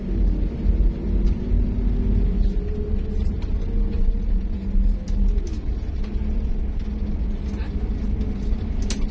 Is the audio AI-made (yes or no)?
no